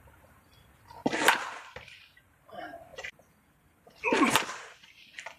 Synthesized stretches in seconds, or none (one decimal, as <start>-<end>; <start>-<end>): 0.0-5.4